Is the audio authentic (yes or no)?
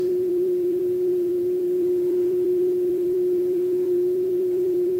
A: no